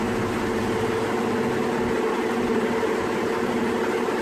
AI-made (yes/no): no